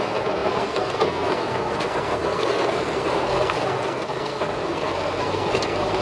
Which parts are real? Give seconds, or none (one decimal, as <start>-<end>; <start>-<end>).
none